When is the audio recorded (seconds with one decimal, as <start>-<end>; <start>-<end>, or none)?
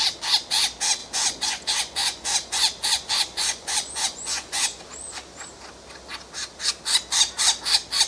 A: 0.0-1.0; 4.8-8.1